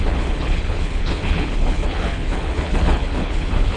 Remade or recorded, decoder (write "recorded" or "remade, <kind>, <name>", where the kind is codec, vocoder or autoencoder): remade, codec, HILCodec